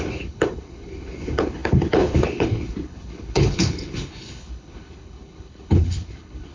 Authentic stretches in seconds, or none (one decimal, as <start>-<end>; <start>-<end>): none